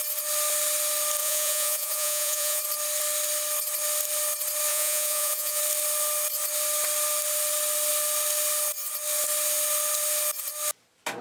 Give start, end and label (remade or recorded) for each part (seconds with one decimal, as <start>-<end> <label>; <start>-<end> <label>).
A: 0.0-1.2 recorded; 1.2-2.6 remade; 2.6-4.7 recorded; 4.7-5.6 remade; 5.6-11.2 recorded